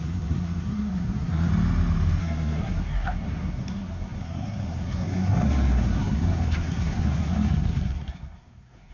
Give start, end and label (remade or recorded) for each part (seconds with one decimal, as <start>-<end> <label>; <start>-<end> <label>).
0.0-1.5 remade; 1.5-2.2 recorded; 2.2-8.9 remade